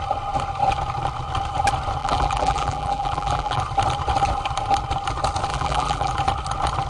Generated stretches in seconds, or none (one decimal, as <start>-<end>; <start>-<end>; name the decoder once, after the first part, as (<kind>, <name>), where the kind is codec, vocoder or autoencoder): 2.0-3.6 (vocoder, BigVGAN v2); 5.5-6.1